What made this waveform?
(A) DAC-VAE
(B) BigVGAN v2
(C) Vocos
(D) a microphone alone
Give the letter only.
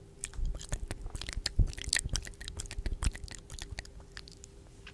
D